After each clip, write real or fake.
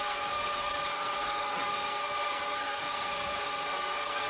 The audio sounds fake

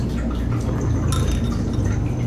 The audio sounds real